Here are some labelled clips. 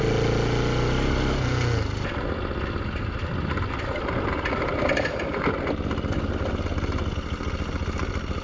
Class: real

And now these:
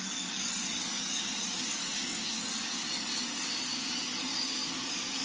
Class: fake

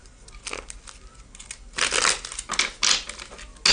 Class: real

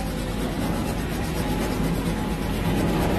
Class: real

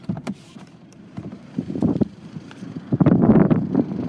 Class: fake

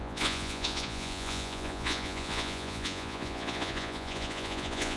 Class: fake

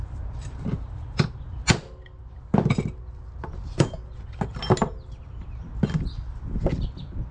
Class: real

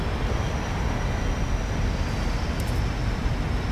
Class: real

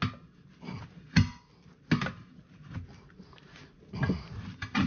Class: real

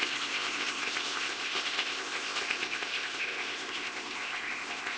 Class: fake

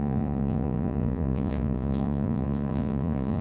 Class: fake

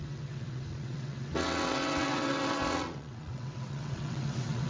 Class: fake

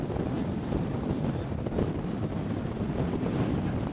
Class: fake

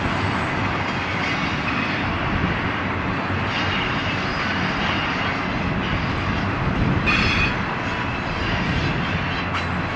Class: real